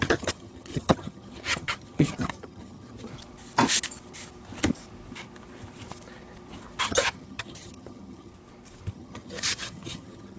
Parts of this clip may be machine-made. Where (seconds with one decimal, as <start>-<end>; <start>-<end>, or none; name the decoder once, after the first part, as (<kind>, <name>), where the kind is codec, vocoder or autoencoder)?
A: 0.0-3.1 (vocoder, HiFi-GAN); 6.8-8.3; 8.9-10.4